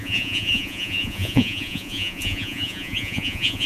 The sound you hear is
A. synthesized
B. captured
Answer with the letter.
A